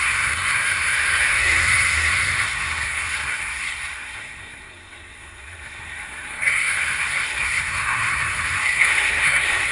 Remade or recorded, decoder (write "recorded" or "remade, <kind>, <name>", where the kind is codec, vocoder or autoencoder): remade, codec, SNAC